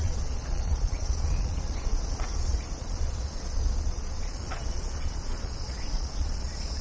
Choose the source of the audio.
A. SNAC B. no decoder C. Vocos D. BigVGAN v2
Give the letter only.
C